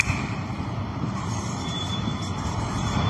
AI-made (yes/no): yes